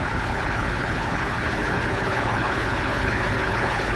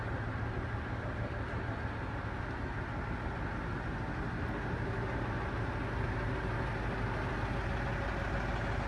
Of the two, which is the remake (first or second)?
first